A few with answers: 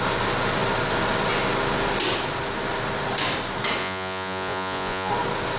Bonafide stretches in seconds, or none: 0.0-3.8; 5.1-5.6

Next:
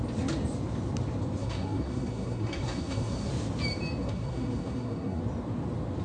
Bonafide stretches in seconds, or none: 0.0-1.4; 3.3-4.0; 5.2-6.0